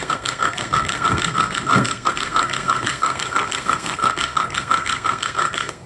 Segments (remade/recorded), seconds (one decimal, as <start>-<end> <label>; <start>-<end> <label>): 0.0-5.9 remade

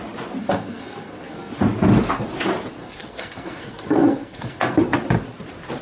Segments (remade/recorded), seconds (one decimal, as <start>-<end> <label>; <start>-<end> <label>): 0.0-0.4 recorded; 0.4-1.5 remade; 1.5-2.8 recorded; 2.8-4.8 remade; 4.8-5.8 recorded